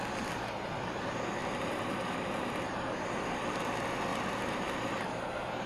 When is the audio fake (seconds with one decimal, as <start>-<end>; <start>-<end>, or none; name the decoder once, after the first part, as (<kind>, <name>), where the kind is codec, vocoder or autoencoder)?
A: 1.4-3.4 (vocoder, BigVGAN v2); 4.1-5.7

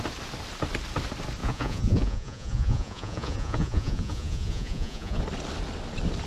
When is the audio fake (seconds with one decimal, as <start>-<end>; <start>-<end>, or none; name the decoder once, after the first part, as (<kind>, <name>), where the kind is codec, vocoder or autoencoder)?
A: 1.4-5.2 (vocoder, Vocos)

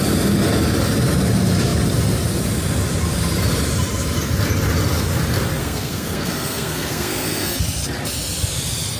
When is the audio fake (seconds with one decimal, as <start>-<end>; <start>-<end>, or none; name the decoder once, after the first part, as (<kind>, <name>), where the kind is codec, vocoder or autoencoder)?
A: 5.6-7.6 (codec, SNAC)

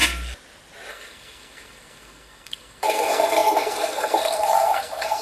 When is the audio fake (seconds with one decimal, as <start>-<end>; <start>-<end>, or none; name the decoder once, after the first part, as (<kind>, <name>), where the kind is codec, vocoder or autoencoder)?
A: 0.9-5.2 (codec, SNAC)